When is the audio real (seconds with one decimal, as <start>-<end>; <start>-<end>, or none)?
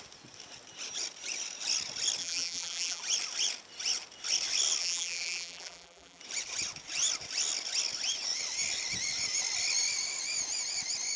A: 0.0-2.2; 3.0-4.8; 6.2-11.2